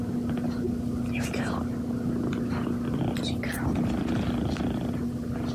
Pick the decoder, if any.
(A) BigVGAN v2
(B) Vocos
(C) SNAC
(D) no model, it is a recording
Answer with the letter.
D